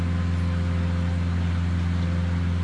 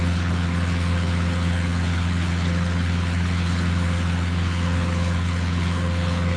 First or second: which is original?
first